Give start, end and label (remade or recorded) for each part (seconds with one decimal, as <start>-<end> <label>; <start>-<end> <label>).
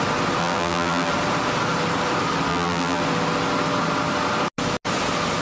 0.0-0.4 recorded; 0.4-1.1 remade; 1.1-2.5 recorded; 2.5-3.0 remade; 3.0-5.4 recorded